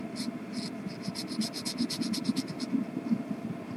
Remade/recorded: recorded